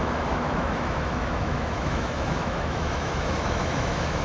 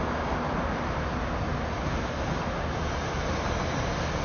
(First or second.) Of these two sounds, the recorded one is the second